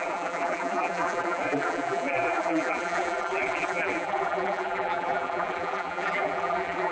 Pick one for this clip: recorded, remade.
remade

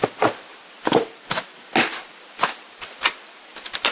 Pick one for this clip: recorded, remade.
recorded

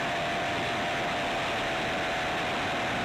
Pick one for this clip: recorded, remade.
recorded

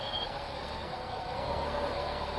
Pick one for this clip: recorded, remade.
remade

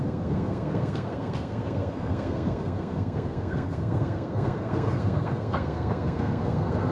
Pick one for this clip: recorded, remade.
remade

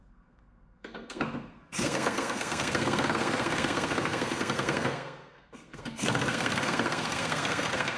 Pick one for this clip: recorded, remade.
remade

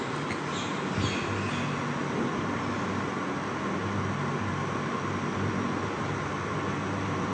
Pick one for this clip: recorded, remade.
recorded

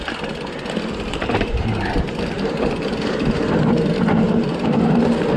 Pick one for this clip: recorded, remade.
recorded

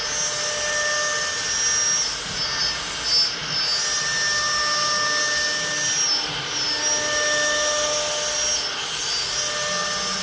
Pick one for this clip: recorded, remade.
recorded